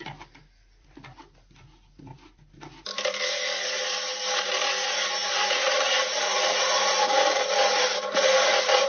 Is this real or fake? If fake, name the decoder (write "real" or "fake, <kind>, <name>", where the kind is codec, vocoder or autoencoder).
real